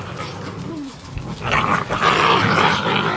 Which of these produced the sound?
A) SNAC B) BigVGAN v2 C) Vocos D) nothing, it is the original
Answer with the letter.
D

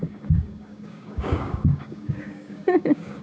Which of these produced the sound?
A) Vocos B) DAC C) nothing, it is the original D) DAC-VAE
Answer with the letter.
B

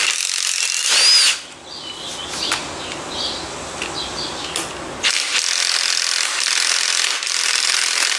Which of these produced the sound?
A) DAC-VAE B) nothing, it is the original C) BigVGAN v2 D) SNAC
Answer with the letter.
B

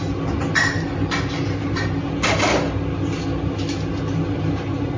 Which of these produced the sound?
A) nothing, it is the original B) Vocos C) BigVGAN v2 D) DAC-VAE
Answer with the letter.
A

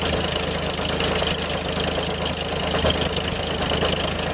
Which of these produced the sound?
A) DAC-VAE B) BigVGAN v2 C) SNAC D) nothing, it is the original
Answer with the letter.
D